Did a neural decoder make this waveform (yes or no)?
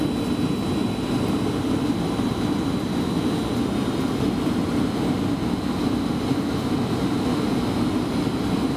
no